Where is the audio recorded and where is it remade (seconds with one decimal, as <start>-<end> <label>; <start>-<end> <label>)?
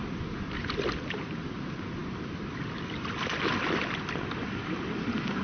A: 0.0-5.4 recorded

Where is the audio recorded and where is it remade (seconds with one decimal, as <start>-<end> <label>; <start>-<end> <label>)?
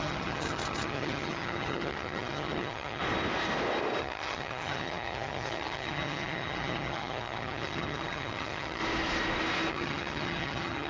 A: 0.0-3.0 remade; 3.0-4.0 recorded; 4.0-8.8 remade; 8.8-9.7 recorded; 9.7-10.9 remade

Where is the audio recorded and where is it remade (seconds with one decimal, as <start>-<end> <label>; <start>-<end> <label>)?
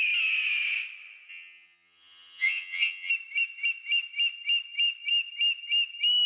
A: 0.0-1.3 recorded; 1.3-3.1 remade; 3.1-6.3 recorded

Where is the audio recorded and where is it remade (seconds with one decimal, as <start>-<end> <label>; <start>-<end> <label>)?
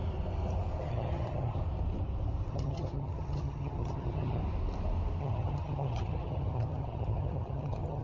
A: 0.0-0.8 recorded; 0.8-1.6 remade; 1.6-2.5 recorded; 2.5-4.4 remade; 4.4-5.2 recorded; 5.2-8.0 remade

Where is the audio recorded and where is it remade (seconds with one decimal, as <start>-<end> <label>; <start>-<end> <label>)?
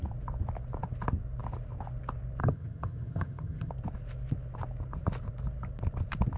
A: 0.0-2.4 recorded; 2.4-3.7 remade; 3.7-6.4 recorded